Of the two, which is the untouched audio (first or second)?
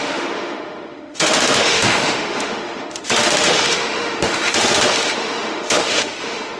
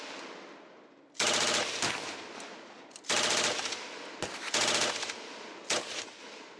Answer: second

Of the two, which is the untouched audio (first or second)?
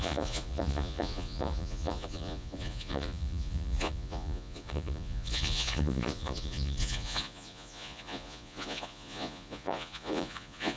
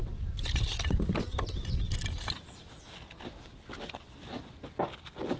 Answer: second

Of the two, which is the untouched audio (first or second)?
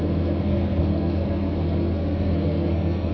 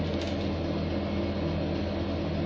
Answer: second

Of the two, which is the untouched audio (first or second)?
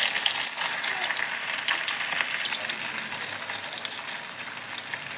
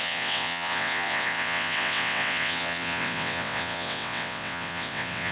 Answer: first